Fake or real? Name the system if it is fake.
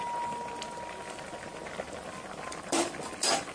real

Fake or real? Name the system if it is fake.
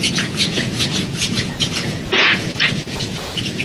fake, vocoder, Vocos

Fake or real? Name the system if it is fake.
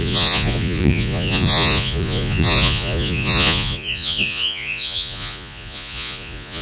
fake, vocoder, Vocos